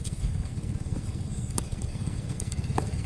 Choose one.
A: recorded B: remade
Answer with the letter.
B